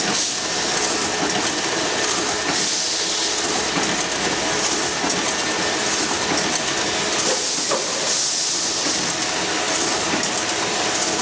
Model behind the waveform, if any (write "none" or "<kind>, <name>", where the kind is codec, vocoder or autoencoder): none